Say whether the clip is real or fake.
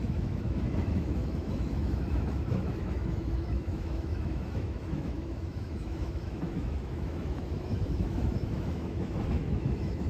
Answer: fake